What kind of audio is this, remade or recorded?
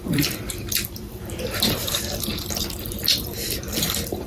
remade